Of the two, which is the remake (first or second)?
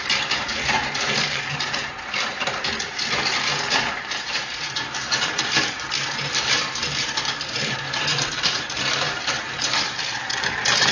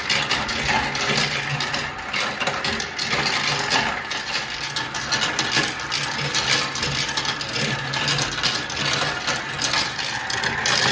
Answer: first